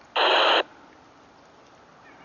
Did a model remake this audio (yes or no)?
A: no